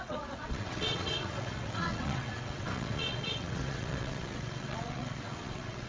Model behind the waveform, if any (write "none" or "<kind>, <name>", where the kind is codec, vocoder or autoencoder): vocoder, WaveNeXt